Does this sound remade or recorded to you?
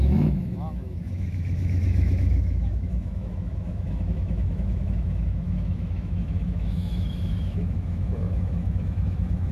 remade